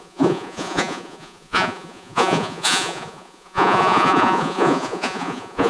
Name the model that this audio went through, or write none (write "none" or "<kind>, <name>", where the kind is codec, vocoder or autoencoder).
vocoder, Vocos